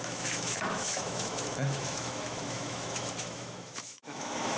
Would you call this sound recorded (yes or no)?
no